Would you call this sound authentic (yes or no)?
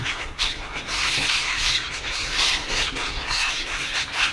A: no